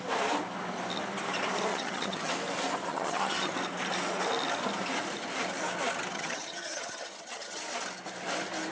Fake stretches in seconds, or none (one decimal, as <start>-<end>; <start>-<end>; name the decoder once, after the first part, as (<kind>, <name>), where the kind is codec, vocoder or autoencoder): 1.7-2.3 (vocoder, HiFi-GAN); 2.9-3.5; 6.1-7.6